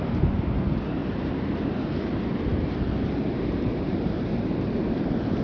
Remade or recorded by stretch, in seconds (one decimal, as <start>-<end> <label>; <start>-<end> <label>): 0.0-1.0 recorded; 1.0-1.5 remade; 1.5-2.5 recorded; 2.5-4.8 remade; 4.8-5.4 recorded